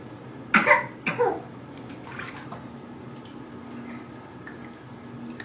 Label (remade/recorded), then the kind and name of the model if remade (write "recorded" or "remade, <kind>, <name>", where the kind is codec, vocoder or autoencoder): recorded